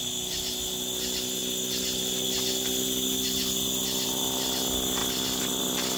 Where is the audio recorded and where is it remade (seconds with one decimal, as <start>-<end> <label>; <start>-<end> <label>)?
0.0-6.0 recorded